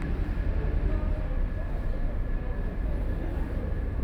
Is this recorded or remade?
recorded